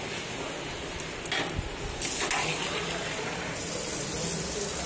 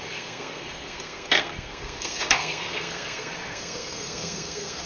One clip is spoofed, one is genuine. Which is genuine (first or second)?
first